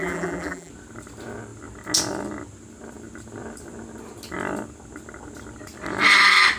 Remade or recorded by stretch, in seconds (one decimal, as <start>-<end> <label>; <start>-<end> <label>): 0.0-0.7 remade; 0.7-6.6 recorded